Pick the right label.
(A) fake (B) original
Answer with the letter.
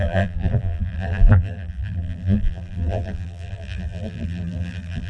A